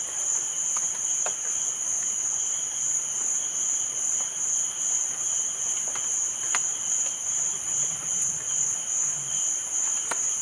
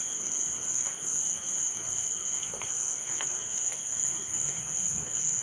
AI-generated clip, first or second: second